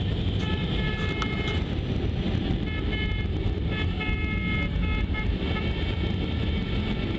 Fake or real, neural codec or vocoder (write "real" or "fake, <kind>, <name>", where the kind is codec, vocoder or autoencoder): real